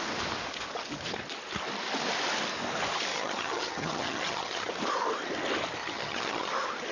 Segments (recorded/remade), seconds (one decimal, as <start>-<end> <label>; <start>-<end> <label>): 0.0-3.1 recorded; 3.1-4.7 remade; 4.7-5.8 recorded; 5.8-6.5 remade; 6.5-6.9 recorded